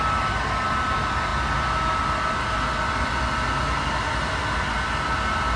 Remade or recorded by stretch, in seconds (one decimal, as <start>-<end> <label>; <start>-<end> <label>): 0.0-5.6 recorded